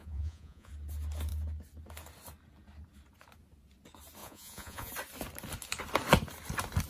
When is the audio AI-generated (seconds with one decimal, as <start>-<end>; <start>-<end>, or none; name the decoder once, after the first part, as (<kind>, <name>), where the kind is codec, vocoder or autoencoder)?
0.0-0.7 (vocoder, Vocos); 4.2-4.9